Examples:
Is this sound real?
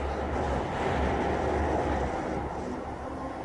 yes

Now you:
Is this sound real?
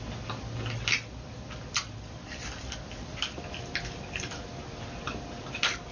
yes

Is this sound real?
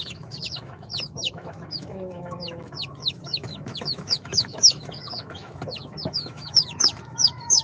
no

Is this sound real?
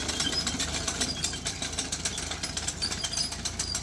no